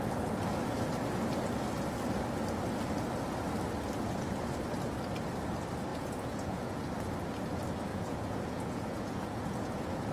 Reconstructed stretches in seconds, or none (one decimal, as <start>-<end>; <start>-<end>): 5.9-6.8; 7.9-10.1